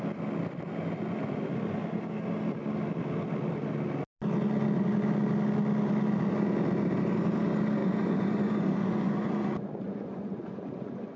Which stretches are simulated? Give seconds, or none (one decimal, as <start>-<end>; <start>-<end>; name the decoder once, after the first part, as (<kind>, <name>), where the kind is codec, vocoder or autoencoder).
7.8-11.2 (vocoder, Vocos)

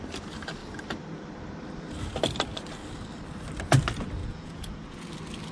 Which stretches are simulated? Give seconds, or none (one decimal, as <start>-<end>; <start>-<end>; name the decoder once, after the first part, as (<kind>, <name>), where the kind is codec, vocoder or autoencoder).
4.2-5.1 (vocoder, Vocos)

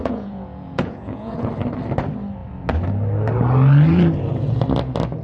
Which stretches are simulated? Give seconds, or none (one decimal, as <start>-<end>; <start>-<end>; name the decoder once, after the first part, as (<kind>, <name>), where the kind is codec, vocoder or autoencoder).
0.0-1.5 (vocoder, Vocos)